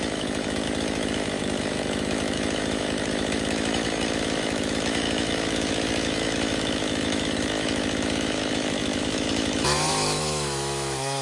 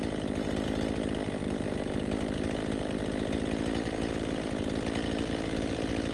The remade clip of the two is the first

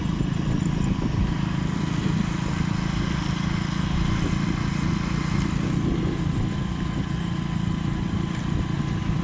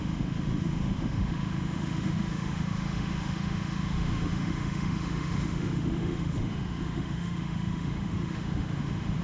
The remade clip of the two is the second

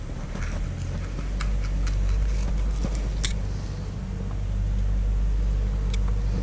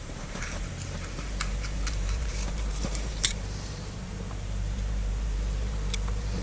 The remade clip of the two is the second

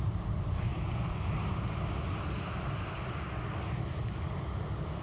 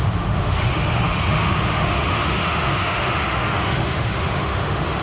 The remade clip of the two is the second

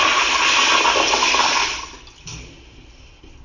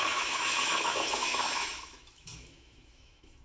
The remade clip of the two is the second